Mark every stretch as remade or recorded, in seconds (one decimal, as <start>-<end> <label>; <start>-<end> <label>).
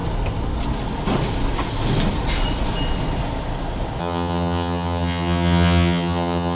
0.0-4.0 recorded; 4.0-6.6 remade